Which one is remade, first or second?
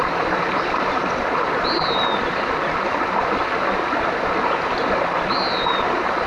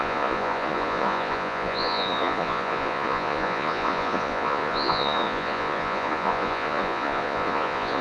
second